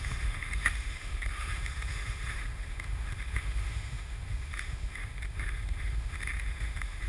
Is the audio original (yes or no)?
no